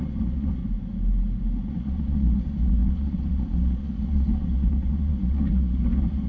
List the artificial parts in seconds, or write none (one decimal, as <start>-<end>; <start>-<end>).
0.0-0.6; 1.7-6.3